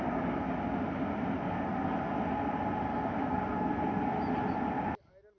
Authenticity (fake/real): real